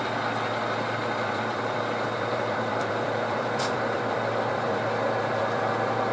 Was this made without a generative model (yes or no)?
no